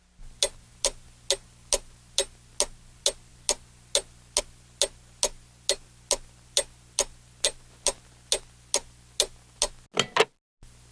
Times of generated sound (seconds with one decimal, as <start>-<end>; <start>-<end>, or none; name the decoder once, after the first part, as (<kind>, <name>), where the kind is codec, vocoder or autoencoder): none